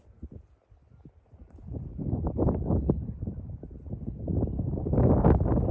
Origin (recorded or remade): recorded